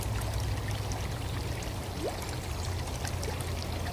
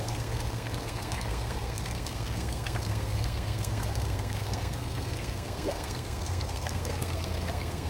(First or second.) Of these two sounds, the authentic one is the first